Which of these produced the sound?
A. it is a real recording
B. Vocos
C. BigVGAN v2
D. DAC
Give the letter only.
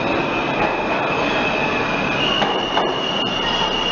A